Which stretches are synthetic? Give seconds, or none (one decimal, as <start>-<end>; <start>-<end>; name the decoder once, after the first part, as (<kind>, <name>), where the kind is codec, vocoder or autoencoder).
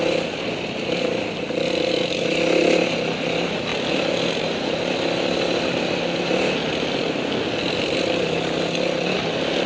none